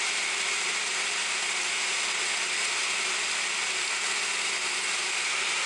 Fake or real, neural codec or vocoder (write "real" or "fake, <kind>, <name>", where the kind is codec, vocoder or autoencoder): real